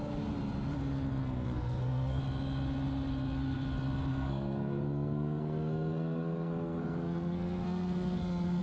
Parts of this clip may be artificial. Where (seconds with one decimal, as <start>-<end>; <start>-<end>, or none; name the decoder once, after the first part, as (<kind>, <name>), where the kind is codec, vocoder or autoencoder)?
1.2-2.2 (codec, SNAC); 4.1-8.6